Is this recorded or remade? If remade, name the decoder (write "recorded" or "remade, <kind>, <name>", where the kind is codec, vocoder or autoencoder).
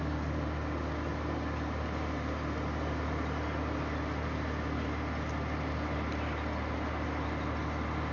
recorded